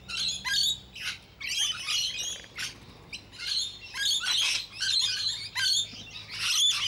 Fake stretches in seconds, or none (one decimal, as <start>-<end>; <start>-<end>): none